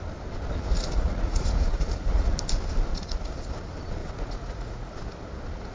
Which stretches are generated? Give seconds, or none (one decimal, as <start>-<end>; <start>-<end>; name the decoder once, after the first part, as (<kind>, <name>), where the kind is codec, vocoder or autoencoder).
0.7-2.3 (vocoder, Vocos); 2.9-3.5; 4.0-5.0